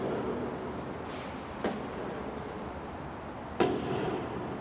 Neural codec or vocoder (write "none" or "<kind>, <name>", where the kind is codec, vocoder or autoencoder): none